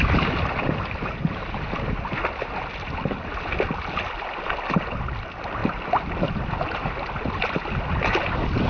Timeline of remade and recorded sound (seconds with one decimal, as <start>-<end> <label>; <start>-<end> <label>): 0.0-8.7 recorded